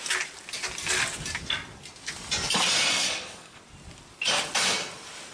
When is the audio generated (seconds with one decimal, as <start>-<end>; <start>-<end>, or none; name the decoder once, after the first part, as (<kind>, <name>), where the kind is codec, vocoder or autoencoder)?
2.9-3.6 (codec, SNAC)